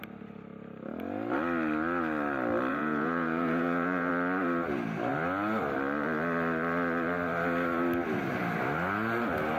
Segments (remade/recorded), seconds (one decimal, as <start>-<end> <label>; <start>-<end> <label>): 0.0-2.7 recorded; 2.7-4.1 remade; 4.1-9.6 recorded